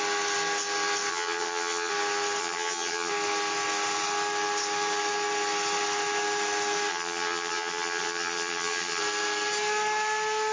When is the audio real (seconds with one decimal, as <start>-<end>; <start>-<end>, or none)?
0.0-1.1; 1.9-2.4; 3.1-6.9; 9.0-10.5